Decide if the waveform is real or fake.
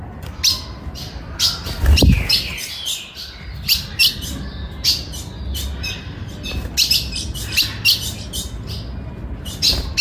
real